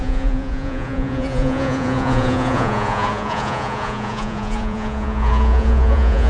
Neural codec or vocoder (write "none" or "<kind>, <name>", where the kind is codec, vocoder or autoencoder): vocoder, Vocos